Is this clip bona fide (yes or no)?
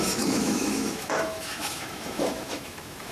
no